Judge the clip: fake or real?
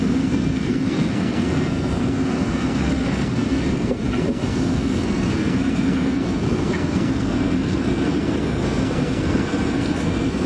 fake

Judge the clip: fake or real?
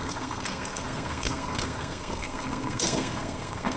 fake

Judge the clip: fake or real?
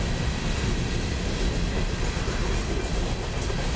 real